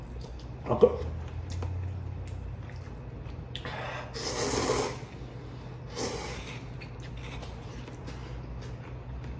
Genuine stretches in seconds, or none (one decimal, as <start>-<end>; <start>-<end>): 0.0-9.4